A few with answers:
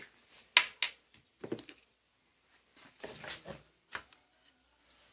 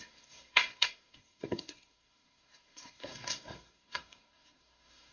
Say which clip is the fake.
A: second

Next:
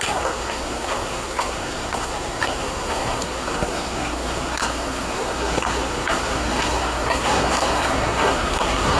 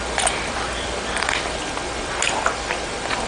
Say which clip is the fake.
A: first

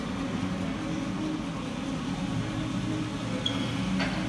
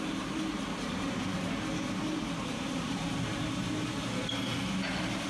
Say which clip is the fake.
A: second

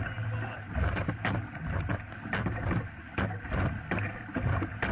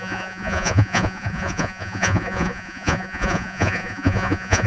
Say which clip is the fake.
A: second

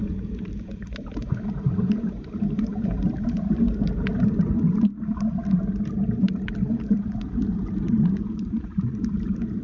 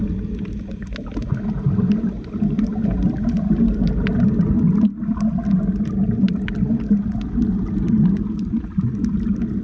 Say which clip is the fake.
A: first